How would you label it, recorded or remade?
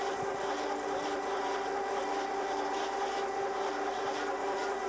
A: recorded